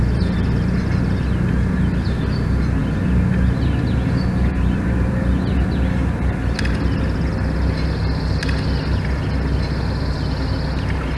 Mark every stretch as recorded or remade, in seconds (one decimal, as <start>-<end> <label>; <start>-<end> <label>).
0.0-11.2 recorded